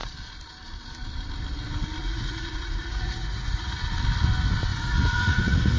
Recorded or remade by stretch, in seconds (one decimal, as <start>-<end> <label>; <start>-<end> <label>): 0.0-2.0 recorded; 2.0-3.9 remade; 3.9-4.7 recorded; 4.7-5.8 remade